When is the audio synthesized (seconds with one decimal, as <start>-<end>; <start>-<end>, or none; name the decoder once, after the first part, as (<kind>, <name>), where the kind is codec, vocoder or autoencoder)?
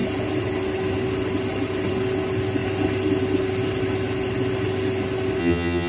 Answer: 5.4-5.9 (vocoder, HiFi-GAN)